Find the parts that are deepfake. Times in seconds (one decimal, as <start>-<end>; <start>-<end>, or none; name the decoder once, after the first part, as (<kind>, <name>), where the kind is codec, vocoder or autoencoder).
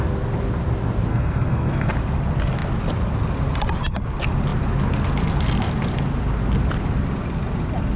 1.1-1.9 (codec, SNAC)